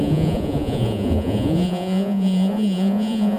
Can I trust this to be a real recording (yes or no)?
no